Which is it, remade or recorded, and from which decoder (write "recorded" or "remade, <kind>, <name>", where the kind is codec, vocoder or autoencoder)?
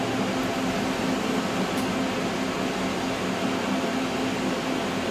recorded